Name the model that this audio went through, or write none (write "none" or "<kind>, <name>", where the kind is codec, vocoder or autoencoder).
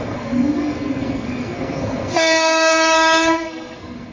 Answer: codec, SNAC